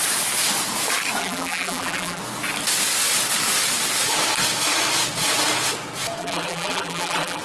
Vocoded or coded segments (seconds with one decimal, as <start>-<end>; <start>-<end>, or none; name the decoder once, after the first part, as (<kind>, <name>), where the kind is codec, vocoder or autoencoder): 1.2-2.2 (vocoder, BigVGAN v2); 6.2-7.4